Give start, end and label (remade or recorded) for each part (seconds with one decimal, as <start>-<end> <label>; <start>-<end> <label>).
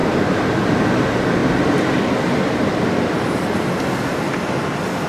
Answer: 0.0-0.5 remade; 0.5-5.1 recorded